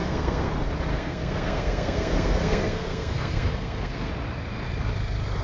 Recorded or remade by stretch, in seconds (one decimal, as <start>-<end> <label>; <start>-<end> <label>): 0.0-0.5 remade; 0.5-0.9 recorded; 0.9-4.1 remade; 4.1-5.4 recorded